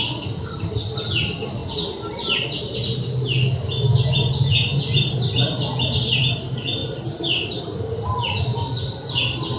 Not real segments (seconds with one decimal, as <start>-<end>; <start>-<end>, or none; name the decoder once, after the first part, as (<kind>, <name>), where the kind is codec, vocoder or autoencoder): none